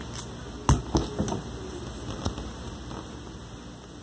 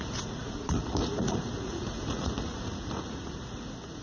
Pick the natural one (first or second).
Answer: first